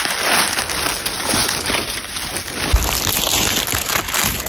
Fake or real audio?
real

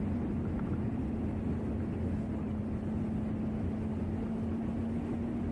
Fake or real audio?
real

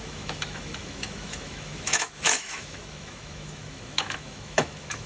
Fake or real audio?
fake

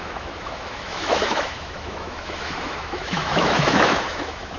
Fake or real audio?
fake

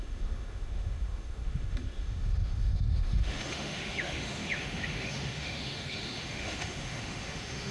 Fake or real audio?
fake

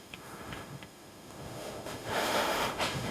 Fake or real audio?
fake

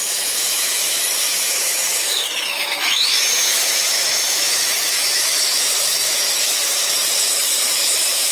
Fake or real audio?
fake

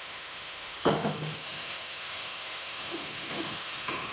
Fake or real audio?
fake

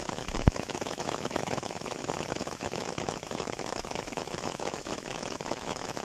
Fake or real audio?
fake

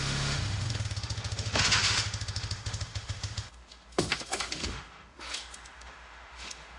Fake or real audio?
fake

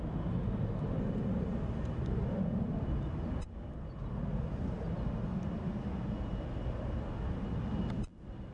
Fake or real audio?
real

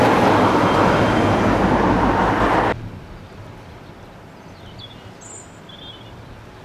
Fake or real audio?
real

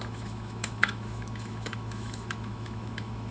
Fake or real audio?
fake